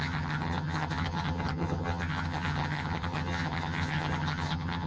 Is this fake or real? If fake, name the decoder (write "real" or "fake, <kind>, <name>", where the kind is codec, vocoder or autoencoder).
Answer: fake, vocoder, HiFi-GAN